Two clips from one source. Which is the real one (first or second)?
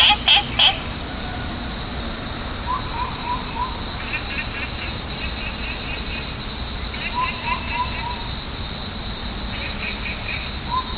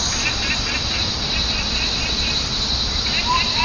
first